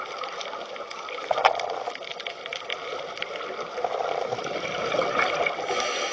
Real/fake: real